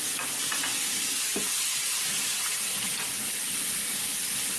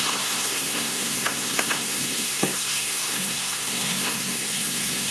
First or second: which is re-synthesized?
second